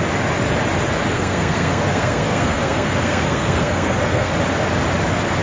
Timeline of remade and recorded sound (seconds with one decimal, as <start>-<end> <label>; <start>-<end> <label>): 0.0-1.1 recorded; 1.1-4.3 remade; 4.3-5.4 recorded